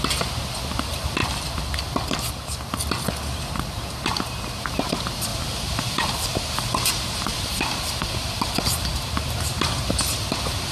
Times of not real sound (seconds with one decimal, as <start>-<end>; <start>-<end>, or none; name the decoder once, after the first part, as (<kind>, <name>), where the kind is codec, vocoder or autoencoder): 5.3-10.0 (vocoder, BigVGAN v2)